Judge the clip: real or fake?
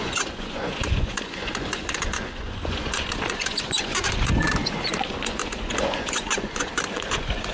fake